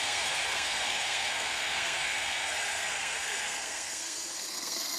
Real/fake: fake